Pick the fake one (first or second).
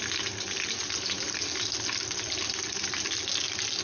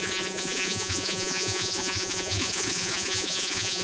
second